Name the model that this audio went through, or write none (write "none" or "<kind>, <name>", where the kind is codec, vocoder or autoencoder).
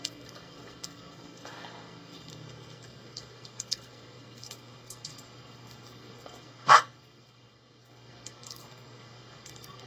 codec, SNAC